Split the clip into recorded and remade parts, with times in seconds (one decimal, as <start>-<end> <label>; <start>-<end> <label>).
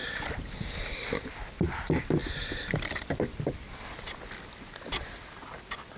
0.0-6.0 recorded